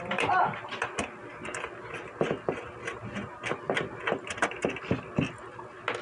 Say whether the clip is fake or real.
real